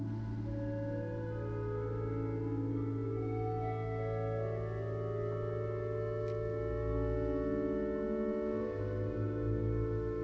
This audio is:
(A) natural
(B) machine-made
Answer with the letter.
A